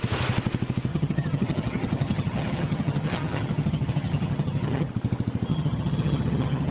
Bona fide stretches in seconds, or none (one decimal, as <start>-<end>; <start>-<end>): 0.0-0.9; 4.9-5.5